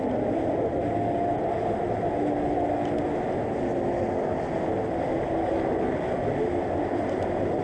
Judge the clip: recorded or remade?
recorded